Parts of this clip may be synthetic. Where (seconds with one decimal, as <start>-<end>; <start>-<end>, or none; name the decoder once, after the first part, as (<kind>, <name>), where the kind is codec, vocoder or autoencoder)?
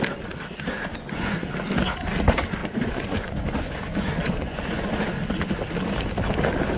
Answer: 0.9-1.5 (vocoder, Vocos); 2.6-4.9